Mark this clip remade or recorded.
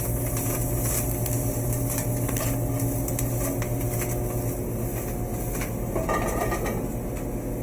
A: recorded